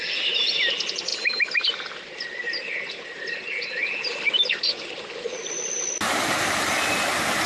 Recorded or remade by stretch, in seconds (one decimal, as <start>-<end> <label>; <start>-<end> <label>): 0.0-7.5 recorded